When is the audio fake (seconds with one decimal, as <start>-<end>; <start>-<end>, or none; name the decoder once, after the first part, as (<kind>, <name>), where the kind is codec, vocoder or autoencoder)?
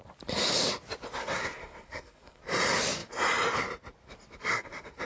1.2-2.4 (codec, SNAC); 4.4-5.0